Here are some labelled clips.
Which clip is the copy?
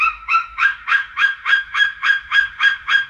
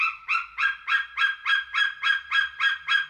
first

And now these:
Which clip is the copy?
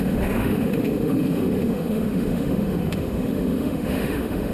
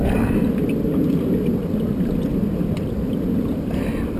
first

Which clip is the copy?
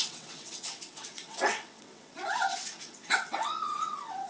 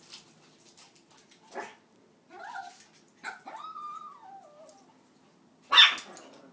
first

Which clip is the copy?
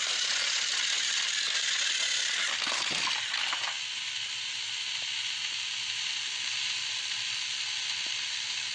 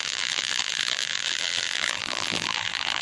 second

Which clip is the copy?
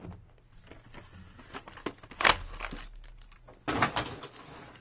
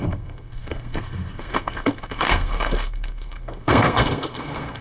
second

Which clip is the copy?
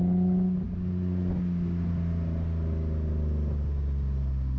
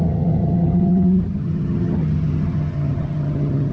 second